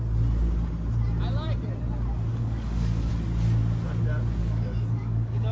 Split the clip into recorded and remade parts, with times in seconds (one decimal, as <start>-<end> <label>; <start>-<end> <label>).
0.0-2.3 recorded; 2.3-3.1 remade; 3.1-4.4 recorded; 4.4-5.5 remade